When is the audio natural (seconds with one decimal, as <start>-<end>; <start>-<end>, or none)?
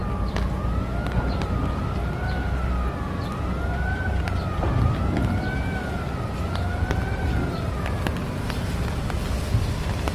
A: 0.0-10.1